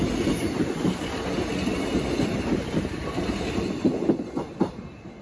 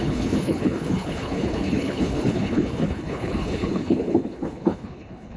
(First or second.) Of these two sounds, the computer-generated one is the second